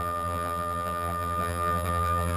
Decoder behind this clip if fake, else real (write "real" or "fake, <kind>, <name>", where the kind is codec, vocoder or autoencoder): fake, vocoder, BigVGAN v2